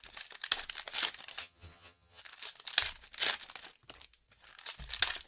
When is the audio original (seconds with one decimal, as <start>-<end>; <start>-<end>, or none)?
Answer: 0.0-1.4; 2.2-5.3